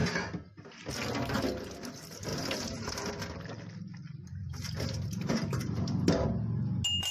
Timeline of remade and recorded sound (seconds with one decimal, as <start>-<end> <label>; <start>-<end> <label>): 0.0-2.3 recorded; 2.3-3.1 remade; 3.1-4.4 recorded; 4.4-6.3 remade; 6.3-7.1 recorded

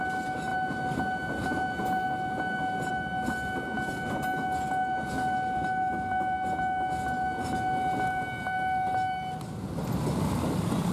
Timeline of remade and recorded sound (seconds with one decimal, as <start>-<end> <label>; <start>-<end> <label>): 0.0-10.9 recorded